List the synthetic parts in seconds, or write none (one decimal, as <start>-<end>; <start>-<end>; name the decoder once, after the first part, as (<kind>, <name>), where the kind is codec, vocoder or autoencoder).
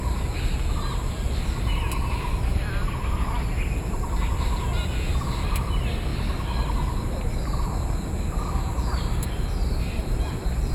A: none